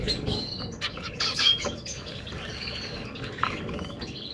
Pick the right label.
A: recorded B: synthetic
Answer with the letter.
B